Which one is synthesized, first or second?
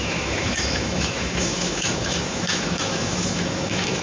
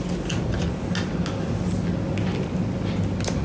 first